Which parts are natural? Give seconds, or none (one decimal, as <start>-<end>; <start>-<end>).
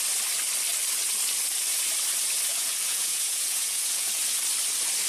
0.0-2.5; 4.2-5.1